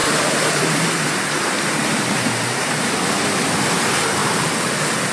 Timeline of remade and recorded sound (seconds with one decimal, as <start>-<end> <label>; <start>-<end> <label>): 0.0-2.9 remade; 2.9-5.1 recorded